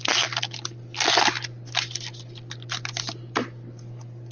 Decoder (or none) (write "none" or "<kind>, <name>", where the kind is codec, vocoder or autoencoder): none